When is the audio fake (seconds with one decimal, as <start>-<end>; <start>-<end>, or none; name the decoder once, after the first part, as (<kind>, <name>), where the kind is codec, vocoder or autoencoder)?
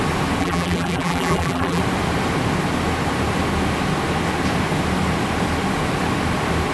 0.4-1.8 (vocoder, BigVGAN v2)